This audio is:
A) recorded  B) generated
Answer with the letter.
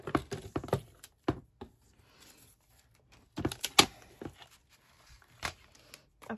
A